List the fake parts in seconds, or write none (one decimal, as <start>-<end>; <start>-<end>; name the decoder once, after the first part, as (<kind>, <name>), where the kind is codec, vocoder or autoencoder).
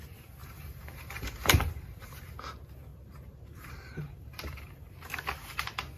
0.4-2.4 (vocoder, BigVGAN v2); 2.9-4.9